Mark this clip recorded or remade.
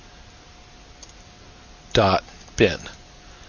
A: recorded